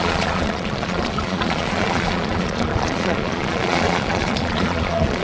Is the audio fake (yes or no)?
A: yes